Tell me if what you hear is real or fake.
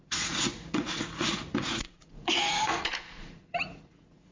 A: fake